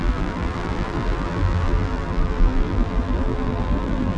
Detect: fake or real fake